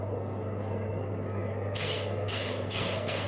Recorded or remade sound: remade